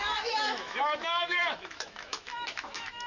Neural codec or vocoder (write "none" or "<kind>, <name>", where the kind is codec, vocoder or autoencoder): autoencoder, DAC-VAE